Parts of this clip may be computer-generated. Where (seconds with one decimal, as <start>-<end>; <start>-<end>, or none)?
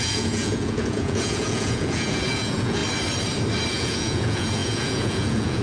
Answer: 0.0-2.8; 3.7-5.6